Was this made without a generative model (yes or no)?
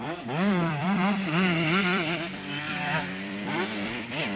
no